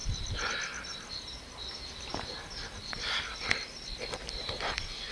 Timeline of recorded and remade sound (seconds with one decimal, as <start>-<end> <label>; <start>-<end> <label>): 0.0-5.1 recorded